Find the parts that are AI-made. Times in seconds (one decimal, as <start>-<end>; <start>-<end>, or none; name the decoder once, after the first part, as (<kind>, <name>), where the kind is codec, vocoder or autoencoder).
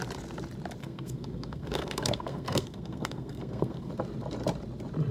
0.8-3.9 (codec, SNAC)